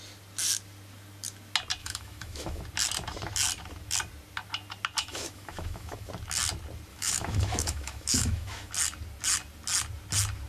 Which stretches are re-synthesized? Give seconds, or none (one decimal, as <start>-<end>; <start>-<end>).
1.8-2.6; 5.0-6.1; 6.9-8.7